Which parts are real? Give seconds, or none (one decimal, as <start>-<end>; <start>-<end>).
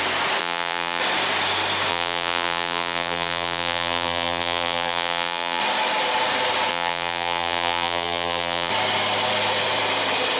0.0-0.4; 1.0-1.9; 5.6-6.7; 8.7-10.4